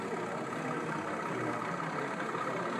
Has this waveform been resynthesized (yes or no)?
no